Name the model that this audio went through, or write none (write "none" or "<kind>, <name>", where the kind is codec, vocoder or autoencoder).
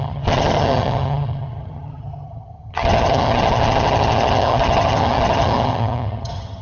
vocoder, HiFi-GAN